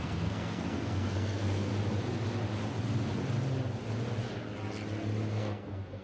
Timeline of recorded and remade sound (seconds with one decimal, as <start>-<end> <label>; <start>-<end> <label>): 0.0-1.7 remade; 1.7-5.3 recorded; 5.3-6.0 remade